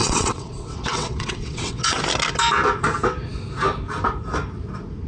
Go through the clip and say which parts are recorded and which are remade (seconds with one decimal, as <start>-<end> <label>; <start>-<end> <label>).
0.0-2.0 remade; 2.0-5.1 recorded